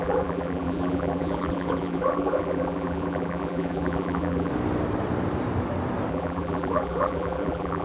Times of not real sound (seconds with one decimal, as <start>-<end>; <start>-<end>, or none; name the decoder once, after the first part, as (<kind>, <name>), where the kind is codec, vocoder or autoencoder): 0.0-4.5 (vocoder, BigVGAN v2); 6.1-7.8